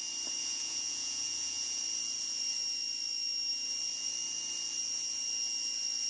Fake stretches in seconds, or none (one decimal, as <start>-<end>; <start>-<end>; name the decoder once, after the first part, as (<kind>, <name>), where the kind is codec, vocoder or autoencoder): 0.4-1.8 (vocoder, Vocos)